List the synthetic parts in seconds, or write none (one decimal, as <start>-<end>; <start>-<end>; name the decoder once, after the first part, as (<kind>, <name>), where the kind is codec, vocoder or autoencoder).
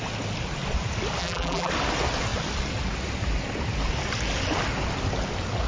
1.2-1.7 (vocoder, BigVGAN v2)